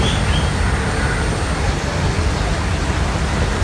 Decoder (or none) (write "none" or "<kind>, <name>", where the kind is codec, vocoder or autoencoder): none